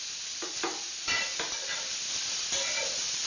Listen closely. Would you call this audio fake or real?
real